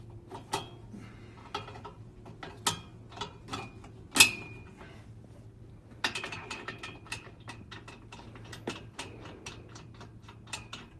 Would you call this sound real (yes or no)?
yes